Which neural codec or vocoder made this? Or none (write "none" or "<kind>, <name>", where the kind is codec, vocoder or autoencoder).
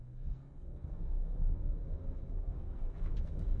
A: codec, SNAC